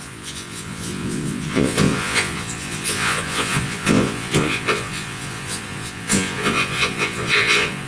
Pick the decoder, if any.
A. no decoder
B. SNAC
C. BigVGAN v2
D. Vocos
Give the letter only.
D